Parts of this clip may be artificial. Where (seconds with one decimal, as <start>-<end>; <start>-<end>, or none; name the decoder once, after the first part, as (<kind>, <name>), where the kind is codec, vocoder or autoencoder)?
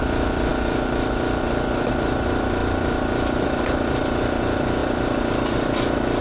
0.0-0.5 (vocoder, BigVGAN v2); 1.4-6.2